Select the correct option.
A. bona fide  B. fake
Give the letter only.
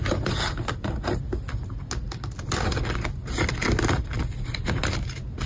A